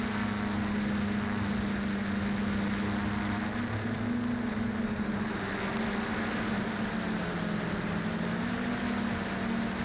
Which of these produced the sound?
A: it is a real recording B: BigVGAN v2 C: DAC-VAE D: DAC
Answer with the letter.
A